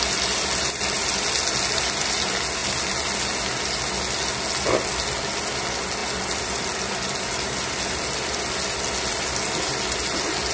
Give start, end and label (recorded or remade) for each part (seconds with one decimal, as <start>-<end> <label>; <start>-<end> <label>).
0.0-10.5 recorded